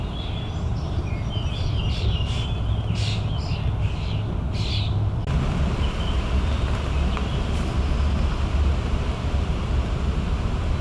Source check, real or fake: real